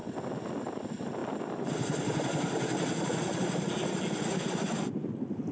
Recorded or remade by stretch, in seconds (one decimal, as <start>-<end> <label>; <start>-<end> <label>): 0.0-5.5 recorded